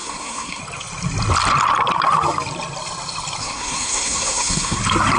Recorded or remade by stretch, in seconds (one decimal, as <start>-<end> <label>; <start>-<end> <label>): 0.0-0.6 remade; 0.6-3.4 recorded; 3.4-4.8 remade; 4.8-5.2 recorded

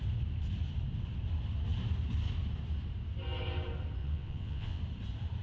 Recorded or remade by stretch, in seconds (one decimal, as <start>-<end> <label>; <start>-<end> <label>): 0.0-4.0 recorded; 4.0-4.8 remade; 4.8-5.4 recorded

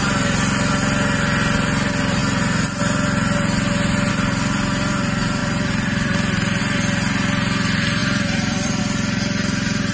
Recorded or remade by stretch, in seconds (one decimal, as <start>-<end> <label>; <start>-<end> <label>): 0.0-5.4 recorded; 5.4-6.6 remade; 6.6-8.0 recorded; 8.0-8.8 remade; 8.8-9.9 recorded

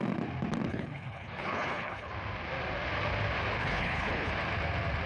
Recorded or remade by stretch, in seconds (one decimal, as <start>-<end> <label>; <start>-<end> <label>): 0.0-0.7 recorded; 0.7-2.1 remade; 2.1-3.6 recorded; 3.6-4.3 remade; 4.3-5.1 recorded

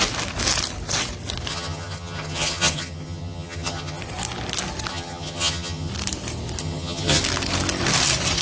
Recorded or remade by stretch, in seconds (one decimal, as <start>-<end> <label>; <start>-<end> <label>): 0.0-1.5 recorded; 1.5-4.0 remade; 4.0-4.9 recorded; 4.9-5.9 remade; 5.9-6.6 recorded; 6.6-7.2 remade; 7.2-8.4 recorded